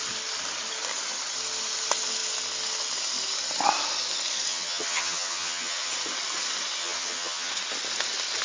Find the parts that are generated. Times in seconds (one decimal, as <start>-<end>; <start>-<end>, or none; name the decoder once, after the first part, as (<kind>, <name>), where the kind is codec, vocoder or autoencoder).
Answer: 4.5-5.9 (vocoder, HiFi-GAN); 6.8-7.5